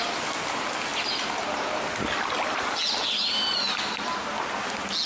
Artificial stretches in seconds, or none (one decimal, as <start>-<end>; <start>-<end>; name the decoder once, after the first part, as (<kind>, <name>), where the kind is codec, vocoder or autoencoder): none

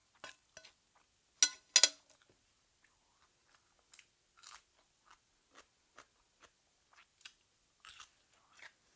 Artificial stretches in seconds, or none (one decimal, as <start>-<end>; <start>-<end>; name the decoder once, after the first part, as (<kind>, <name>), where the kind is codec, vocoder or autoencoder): none

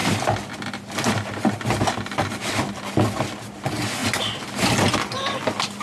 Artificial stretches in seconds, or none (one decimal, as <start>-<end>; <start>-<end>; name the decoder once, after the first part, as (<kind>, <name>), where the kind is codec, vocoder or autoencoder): none

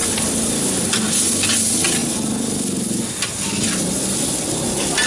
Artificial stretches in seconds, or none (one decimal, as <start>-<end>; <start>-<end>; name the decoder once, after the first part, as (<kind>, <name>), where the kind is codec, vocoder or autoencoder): none